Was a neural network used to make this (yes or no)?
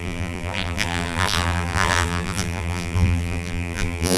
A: yes